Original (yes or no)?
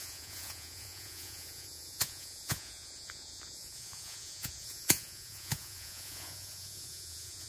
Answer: no